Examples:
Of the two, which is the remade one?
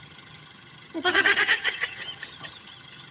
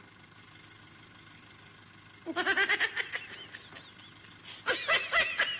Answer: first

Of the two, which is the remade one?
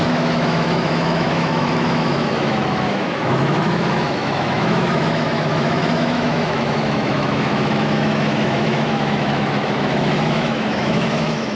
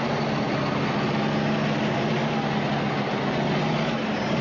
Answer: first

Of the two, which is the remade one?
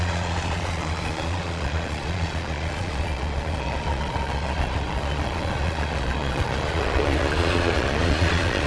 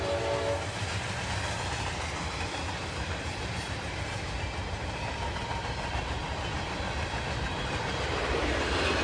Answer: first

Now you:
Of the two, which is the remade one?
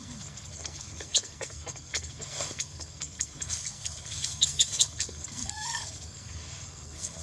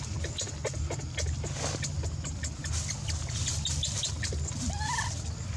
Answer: first